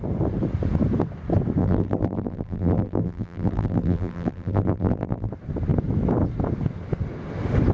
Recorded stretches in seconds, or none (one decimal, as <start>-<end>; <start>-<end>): 0.0-1.6; 5.3-7.7